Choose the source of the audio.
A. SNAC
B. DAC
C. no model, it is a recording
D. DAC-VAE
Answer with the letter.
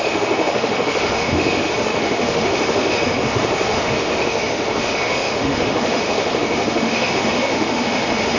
D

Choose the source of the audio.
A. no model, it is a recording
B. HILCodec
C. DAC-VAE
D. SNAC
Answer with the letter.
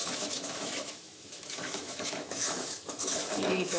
C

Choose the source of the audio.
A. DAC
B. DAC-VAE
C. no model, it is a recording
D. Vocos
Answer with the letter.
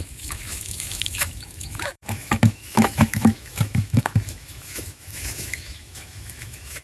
B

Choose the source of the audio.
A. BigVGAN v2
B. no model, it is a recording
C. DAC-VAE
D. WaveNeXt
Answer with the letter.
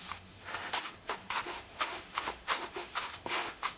C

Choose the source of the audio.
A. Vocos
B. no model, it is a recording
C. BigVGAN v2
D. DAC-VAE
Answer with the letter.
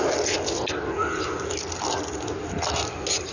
B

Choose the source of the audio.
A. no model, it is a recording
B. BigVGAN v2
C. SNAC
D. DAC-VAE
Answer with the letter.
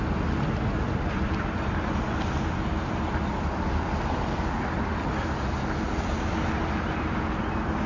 A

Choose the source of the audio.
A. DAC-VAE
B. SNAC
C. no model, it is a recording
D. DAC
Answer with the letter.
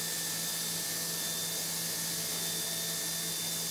C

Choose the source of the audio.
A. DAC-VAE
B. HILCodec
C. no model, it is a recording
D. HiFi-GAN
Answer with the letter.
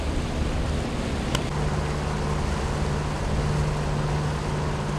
C